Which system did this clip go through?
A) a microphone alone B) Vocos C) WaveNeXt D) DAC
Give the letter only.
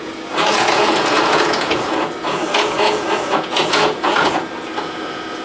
B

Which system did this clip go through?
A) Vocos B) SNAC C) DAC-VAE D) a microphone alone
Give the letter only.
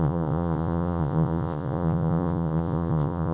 A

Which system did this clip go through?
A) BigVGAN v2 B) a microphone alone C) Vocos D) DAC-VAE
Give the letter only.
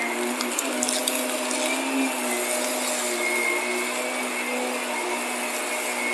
B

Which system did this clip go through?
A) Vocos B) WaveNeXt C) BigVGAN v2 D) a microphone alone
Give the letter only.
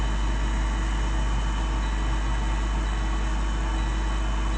D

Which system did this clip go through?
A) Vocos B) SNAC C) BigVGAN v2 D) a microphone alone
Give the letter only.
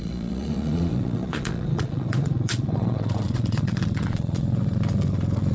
A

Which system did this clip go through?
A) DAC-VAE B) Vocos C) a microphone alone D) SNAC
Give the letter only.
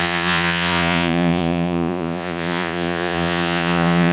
B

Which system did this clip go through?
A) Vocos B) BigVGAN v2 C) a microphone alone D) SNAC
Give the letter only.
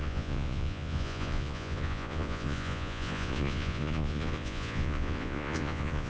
A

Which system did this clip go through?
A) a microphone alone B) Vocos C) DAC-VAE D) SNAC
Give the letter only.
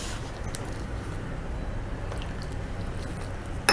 A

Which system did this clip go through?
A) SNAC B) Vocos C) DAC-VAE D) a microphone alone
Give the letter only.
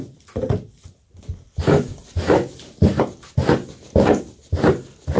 D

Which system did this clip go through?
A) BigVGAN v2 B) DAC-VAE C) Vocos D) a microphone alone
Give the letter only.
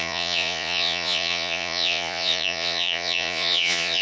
C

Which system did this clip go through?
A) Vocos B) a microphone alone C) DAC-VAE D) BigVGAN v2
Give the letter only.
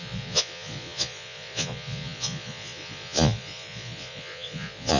A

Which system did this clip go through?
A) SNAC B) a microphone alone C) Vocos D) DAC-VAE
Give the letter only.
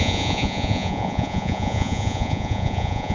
C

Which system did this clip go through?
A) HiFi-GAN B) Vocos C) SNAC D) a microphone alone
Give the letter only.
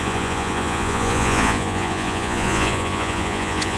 B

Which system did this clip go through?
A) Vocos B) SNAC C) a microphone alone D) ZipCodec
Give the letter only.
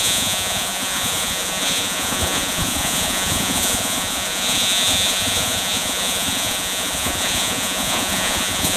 A